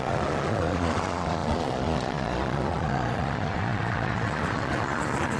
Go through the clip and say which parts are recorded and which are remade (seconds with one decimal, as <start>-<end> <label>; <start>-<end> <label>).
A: 0.0-5.4 remade

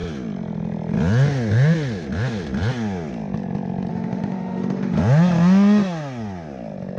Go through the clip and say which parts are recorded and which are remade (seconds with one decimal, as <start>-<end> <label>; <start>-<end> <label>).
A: 0.0-3.9 recorded; 3.9-5.0 remade; 5.0-7.0 recorded

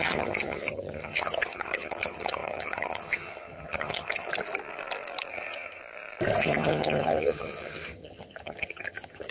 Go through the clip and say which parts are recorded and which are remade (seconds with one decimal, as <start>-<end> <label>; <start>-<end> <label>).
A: 0.0-4.3 remade; 4.3-5.3 recorded; 5.3-5.8 remade; 5.8-6.4 recorded; 6.4-9.3 remade

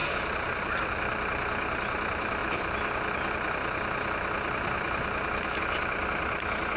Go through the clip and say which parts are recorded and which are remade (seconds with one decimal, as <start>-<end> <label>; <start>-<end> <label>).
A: 0.0-6.8 remade